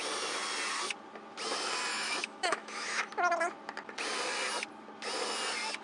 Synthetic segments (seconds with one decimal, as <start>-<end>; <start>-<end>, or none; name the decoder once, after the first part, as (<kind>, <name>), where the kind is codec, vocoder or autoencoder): 1.9-3.1 (autoencoder, DAC-VAE)